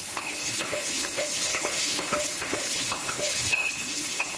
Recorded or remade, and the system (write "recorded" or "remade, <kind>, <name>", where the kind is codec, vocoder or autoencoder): remade, codec, HILCodec